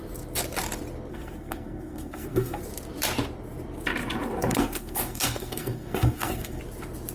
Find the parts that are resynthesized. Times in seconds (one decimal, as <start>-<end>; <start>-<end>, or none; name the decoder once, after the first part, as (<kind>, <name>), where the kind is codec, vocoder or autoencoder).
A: 1.1-2.6 (codec, SNAC); 4.5-6.6